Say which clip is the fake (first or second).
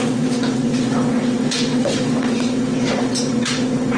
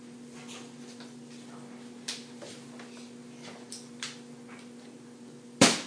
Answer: first